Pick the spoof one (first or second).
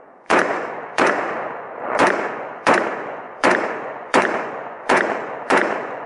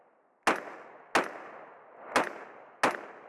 first